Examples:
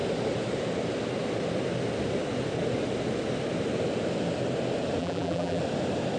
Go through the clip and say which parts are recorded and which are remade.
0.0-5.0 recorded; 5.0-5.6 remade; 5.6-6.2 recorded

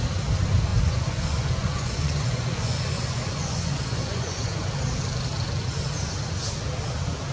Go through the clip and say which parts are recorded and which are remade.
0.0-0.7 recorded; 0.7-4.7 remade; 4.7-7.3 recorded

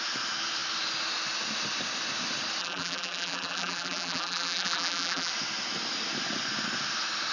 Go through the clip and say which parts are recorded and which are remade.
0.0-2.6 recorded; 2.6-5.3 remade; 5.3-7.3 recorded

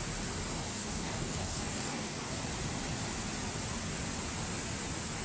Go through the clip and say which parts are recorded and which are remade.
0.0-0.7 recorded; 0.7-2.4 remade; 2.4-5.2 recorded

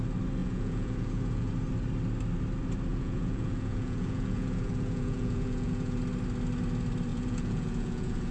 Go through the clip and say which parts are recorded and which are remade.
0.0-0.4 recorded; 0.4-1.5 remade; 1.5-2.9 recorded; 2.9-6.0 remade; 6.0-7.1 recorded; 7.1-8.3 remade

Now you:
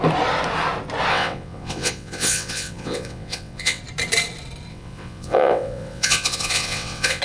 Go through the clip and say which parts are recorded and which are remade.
0.0-1.1 recorded; 1.1-3.8 remade; 3.8-4.7 recorded; 4.7-7.2 remade

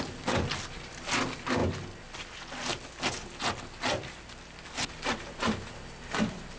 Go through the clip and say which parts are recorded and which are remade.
0.0-6.6 recorded